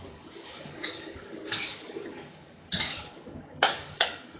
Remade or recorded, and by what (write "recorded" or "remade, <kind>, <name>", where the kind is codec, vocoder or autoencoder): remade, codec, DAC